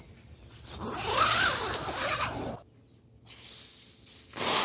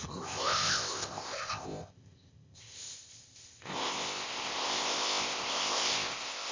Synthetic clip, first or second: second